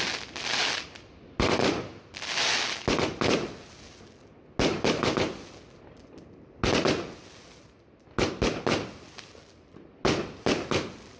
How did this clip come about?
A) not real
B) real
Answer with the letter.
B